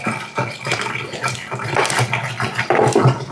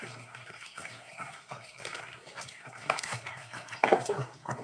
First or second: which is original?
first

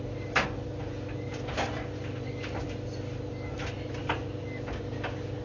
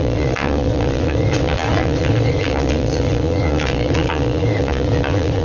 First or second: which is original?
first